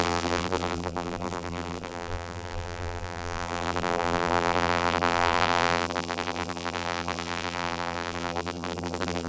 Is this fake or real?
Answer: fake